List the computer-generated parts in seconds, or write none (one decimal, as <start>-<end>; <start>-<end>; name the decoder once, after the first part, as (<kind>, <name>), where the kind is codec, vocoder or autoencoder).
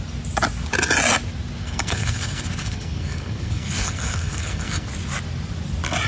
1.6-4.9 (codec, SNAC)